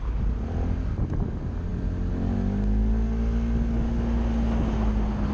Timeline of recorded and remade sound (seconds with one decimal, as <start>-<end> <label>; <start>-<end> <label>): 0.0-5.3 recorded